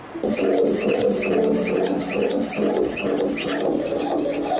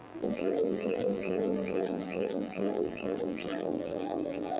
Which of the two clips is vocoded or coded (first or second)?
second